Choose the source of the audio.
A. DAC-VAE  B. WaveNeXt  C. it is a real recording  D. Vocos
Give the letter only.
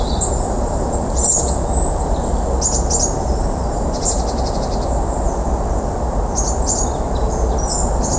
C